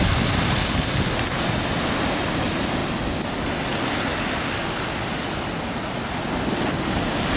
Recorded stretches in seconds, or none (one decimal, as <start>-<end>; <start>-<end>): 0.0-4.1; 4.7-7.4